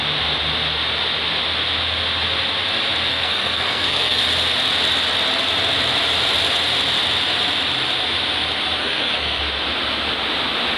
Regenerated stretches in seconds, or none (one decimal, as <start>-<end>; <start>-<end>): 3.1-4.2; 8.8-9.4